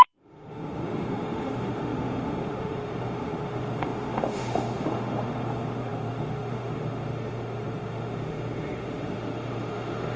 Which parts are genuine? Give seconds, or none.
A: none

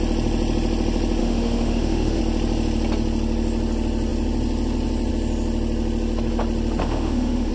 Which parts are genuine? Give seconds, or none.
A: 0.0-1.2; 2.2-6.8

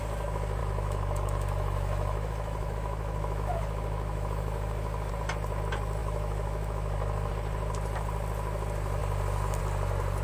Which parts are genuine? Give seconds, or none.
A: 0.0-0.6; 5.1-6.0; 7.3-10.2

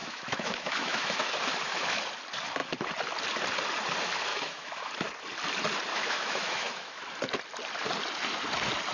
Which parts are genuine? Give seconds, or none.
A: 2.0-4.3; 4.9-5.9; 7.0-8.9

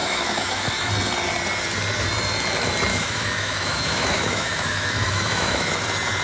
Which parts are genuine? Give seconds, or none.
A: 0.9-2.9; 5.8-6.2

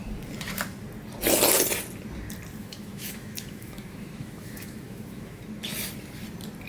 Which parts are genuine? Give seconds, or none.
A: 0.0-2.6; 5.4-6.7

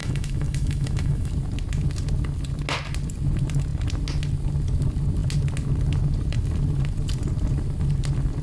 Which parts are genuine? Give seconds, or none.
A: 1.3-8.4

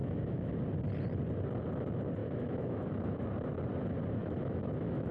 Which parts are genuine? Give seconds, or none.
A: 0.5-2.2; 3.2-4.2